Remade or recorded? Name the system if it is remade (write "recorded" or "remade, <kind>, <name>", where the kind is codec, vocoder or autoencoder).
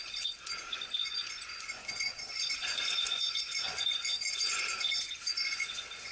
remade, vocoder, Vocos